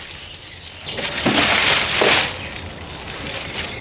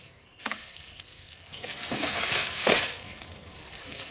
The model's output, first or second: second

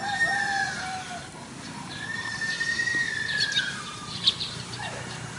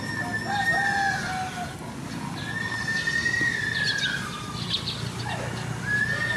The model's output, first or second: first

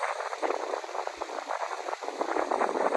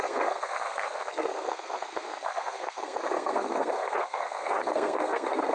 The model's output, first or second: second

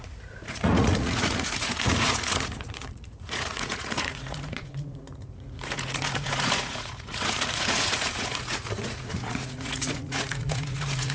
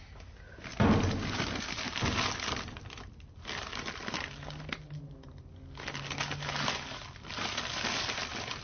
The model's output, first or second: first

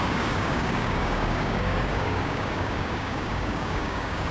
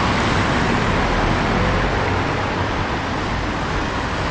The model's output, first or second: first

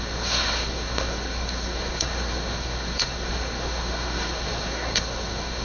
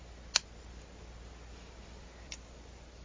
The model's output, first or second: first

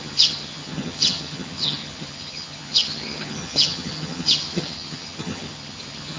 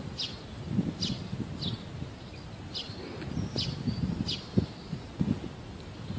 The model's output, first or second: first